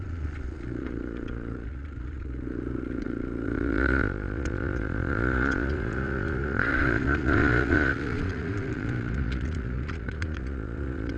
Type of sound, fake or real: fake